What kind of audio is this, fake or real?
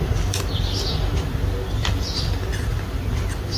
real